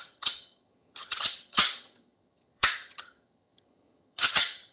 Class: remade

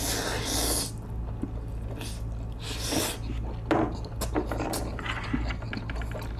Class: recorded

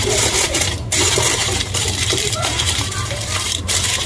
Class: remade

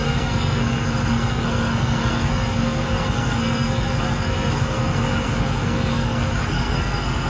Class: remade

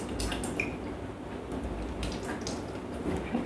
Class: recorded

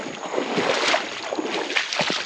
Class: recorded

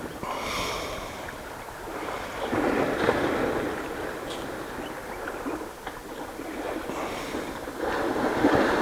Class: recorded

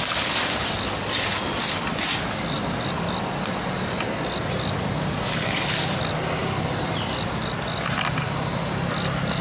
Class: recorded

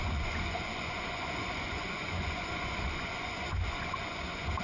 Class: remade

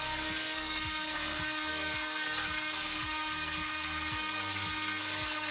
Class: remade